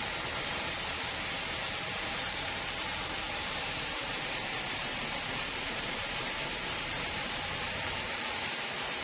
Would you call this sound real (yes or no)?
no